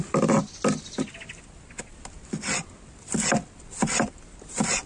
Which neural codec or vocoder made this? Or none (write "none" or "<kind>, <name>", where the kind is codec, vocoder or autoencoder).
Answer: none